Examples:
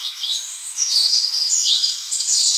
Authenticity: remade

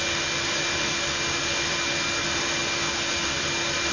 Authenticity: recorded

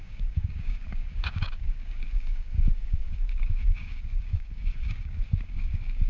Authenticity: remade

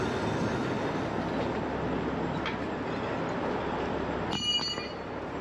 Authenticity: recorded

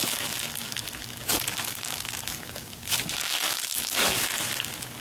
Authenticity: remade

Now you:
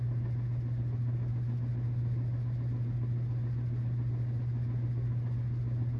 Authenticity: recorded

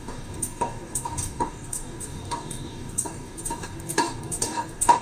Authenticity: remade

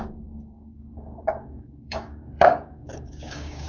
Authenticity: remade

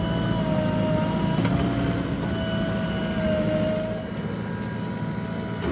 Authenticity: recorded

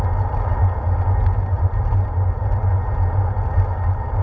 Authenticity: recorded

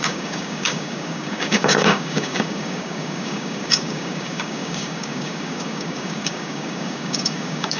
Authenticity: remade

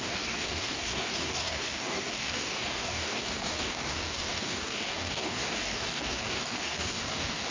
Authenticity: remade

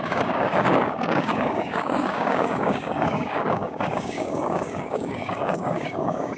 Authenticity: remade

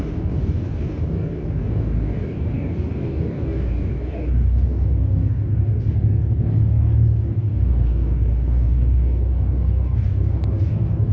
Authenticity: remade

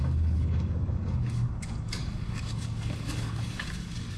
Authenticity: remade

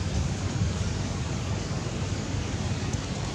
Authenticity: remade